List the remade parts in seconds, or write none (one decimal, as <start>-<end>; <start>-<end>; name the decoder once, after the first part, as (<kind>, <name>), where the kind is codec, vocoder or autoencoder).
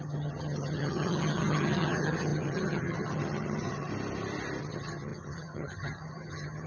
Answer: 0.0-3.9 (vocoder, HiFi-GAN); 4.6-6.7